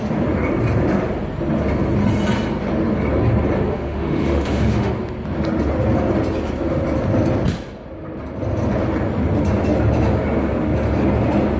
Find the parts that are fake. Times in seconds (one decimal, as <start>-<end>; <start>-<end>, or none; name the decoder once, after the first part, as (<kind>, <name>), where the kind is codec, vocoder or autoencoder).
3.7-4.9 (autoencoder, DAC-VAE)